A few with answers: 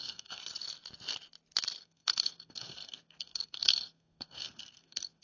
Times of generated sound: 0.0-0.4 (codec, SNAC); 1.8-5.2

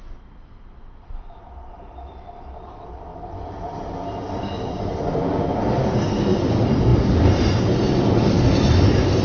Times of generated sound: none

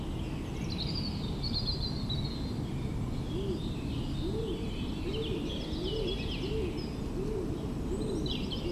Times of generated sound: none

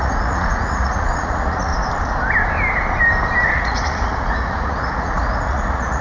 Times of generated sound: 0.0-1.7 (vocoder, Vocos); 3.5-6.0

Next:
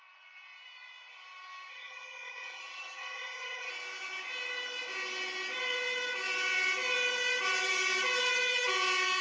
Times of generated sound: 1.7-3.7 (vocoder, HiFi-GAN)

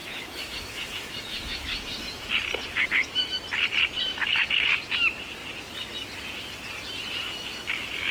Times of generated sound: 0.0-2.3 (autoencoder, DAC-VAE); 4.1-4.7

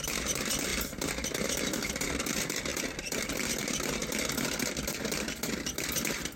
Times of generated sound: none

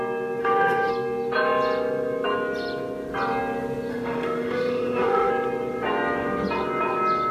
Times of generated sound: 0.4-0.9 (autoencoder, DAC-VAE); 3.9-5.3